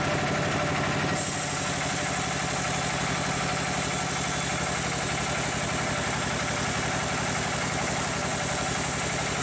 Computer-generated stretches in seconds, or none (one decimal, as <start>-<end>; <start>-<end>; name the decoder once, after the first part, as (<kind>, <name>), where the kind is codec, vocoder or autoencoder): none